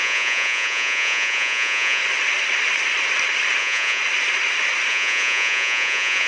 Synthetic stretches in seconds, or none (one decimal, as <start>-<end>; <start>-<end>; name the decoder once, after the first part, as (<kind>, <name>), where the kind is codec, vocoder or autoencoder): 0.0-2.0 (vocoder, Vocos); 3.6-4.0; 4.9-6.3